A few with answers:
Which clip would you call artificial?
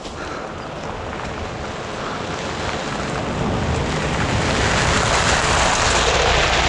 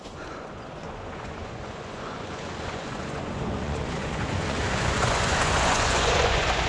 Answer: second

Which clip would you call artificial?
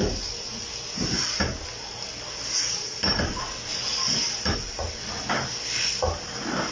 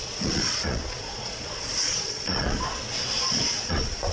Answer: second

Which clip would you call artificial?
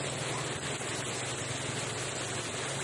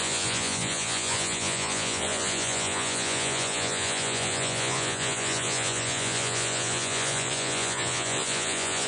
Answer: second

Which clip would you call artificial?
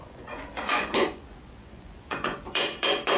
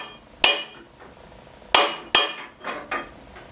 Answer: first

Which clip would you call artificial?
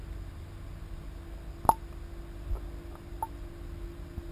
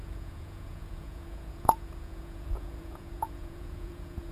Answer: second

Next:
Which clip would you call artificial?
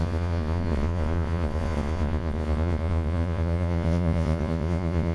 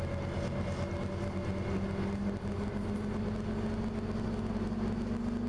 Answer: first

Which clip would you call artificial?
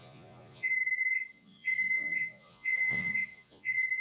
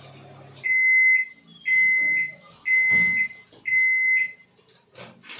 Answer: first